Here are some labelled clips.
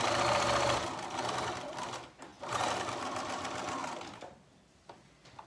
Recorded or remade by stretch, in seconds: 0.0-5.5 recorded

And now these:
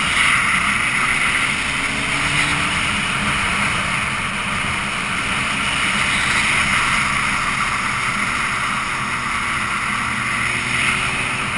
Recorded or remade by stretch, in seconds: 0.0-11.6 recorded

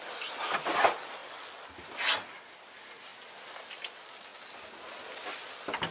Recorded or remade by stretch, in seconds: 0.0-4.3 recorded; 4.3-5.5 remade; 5.5-5.9 recorded

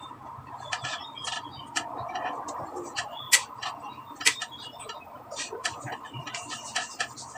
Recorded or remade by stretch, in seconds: 0.0-1.6 recorded; 1.6-3.1 remade; 3.1-4.4 recorded; 4.4-6.5 remade; 6.5-7.4 recorded